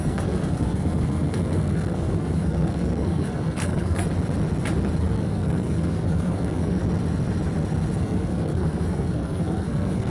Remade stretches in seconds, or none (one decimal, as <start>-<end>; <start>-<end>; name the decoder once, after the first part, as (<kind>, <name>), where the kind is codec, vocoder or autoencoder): 0.0-4.0 (codec, SNAC); 5.0-6.8; 8.0-10.1